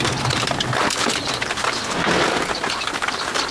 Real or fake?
fake